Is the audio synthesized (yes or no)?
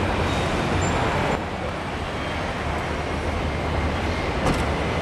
no